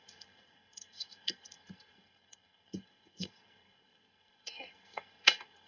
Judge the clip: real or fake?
fake